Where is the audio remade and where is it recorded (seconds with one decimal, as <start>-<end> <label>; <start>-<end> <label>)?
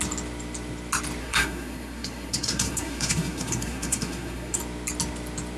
0.0-1.2 recorded; 1.2-4.6 remade; 4.6-5.6 recorded